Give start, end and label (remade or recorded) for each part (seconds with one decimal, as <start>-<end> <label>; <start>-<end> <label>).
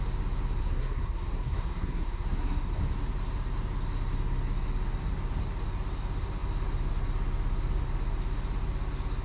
0.0-0.6 recorded; 0.6-2.7 remade; 2.7-9.2 recorded